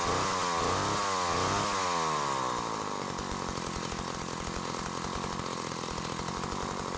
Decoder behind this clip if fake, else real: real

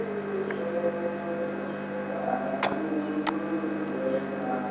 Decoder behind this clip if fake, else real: real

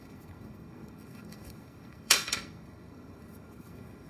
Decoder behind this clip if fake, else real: fake, codec, SNAC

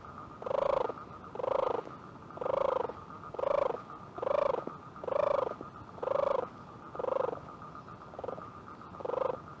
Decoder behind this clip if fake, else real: real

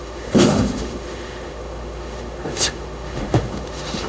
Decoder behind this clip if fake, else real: fake, autoencoder, DAC-VAE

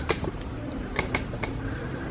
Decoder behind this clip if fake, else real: real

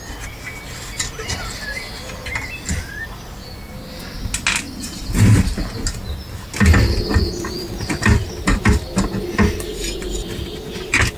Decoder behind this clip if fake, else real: real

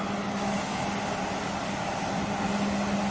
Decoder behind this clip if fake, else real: real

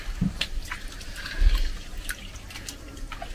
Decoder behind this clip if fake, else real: real